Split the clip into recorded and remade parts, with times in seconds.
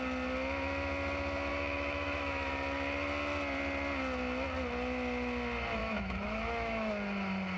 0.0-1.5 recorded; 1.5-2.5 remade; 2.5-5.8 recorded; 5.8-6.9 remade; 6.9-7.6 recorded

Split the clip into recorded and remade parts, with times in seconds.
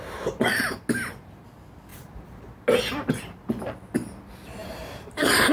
0.0-4.6 recorded; 4.6-5.5 remade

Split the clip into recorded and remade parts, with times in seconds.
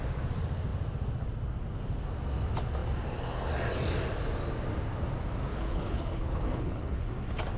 0.0-5.5 recorded; 5.5-7.1 remade; 7.1-7.6 recorded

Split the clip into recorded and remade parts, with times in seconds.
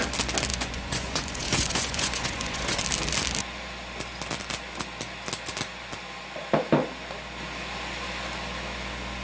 0.0-0.5 recorded; 0.5-2.8 remade; 2.8-9.2 recorded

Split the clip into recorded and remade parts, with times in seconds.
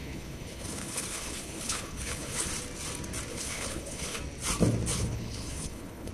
0.0-2.5 remade; 2.5-3.3 recorded; 3.3-4.2 remade; 4.2-4.9 recorded; 4.9-6.1 remade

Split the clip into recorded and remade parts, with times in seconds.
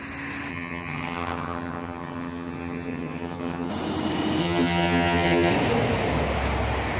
0.0-0.5 recorded; 0.5-3.7 remade; 3.7-4.4 recorded; 4.4-5.5 remade; 5.5-7.0 recorded